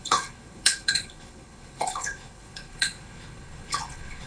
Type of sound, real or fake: fake